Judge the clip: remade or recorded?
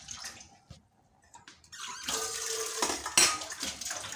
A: recorded